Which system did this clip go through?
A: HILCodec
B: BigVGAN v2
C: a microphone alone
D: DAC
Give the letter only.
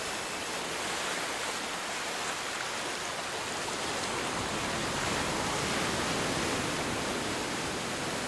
C